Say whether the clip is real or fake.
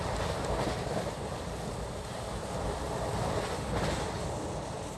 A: real